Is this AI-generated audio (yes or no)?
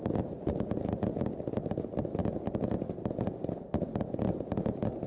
no